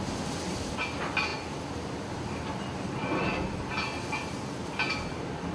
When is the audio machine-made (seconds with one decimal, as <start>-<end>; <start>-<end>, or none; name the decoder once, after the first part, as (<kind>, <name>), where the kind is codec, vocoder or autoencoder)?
none